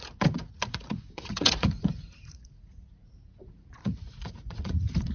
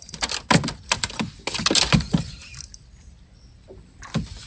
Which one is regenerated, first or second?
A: first